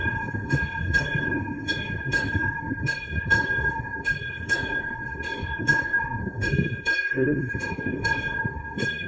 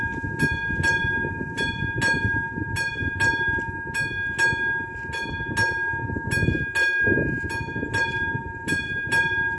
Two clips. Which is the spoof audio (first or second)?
first